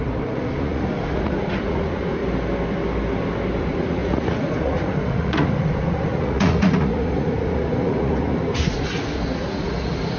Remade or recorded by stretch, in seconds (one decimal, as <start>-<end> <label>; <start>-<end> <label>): 0.0-2.2 remade; 2.2-3.6 recorded; 3.6-10.2 remade